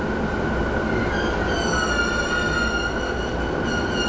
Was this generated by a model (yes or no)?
no